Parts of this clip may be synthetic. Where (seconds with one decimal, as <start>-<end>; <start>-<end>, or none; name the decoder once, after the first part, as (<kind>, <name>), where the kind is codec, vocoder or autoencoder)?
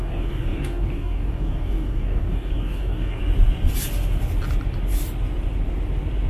0.0-3.2 (codec, DAC)